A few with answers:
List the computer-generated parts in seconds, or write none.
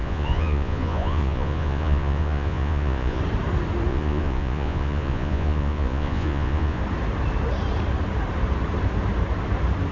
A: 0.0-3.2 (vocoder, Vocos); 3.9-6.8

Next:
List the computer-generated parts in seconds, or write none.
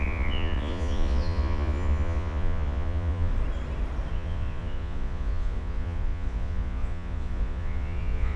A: 0.0-3.3 (vocoder, Vocos); 4.1-8.4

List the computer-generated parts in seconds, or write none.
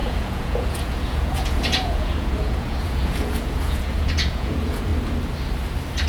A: 0.0-4.9 (vocoder, Vocos)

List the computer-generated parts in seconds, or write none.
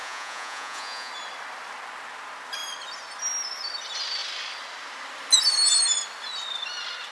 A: 0.0-1.1 (vocoder, Vocos)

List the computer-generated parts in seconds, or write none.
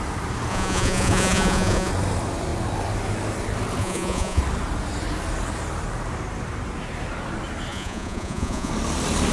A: 0.5-1.9 (vocoder, Vocos); 3.8-4.4; 7.7-8.7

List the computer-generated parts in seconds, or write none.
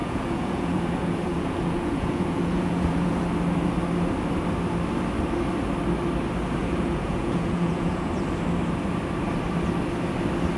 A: 0.0-3.2 (vocoder, Vocos); 6.6-8.1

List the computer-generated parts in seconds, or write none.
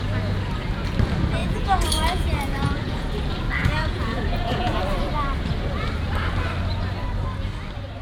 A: 1.4-3.1 (vocoder, Vocos); 3.6-4.8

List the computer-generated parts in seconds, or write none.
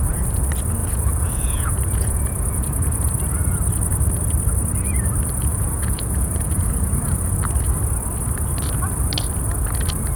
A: 0.8-3.2 (vocoder, Vocos); 5.5-7.3